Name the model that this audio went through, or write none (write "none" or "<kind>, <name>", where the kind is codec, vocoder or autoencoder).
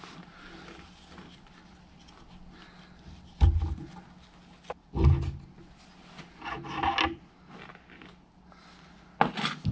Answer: none